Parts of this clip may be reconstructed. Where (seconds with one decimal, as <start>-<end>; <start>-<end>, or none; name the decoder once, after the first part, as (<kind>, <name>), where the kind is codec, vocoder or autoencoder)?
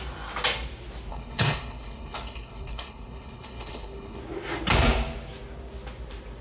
1.1-4.2 (codec, HILCodec)